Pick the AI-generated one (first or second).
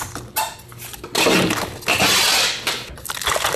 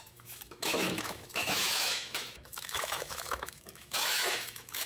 second